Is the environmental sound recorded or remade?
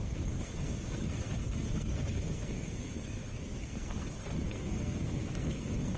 remade